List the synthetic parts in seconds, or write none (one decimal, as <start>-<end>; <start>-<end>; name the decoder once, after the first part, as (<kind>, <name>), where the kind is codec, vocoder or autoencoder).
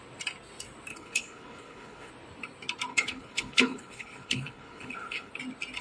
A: 0.9-2.1 (codec, HILCodec); 2.9-5.3